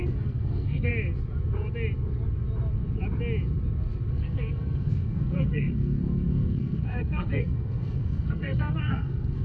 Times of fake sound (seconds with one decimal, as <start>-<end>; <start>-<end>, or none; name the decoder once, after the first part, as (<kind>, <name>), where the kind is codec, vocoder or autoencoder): 0.0-0.9 (codec, SNAC); 4.1-9.4